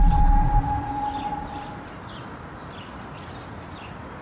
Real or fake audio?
real